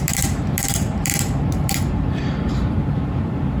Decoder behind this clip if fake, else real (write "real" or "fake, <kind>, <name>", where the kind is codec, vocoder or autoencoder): fake, vocoder, BigVGAN v2